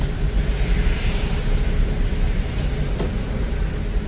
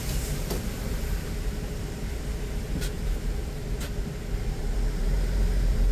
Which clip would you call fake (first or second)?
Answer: second